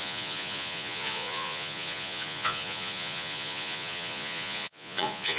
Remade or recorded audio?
remade